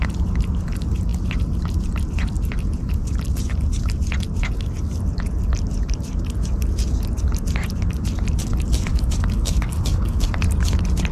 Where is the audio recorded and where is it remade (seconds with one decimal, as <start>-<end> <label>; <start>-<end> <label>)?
0.0-8.9 recorded; 8.9-10.2 remade; 10.2-11.1 recorded